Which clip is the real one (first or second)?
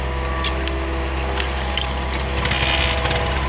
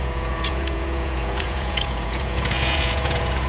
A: first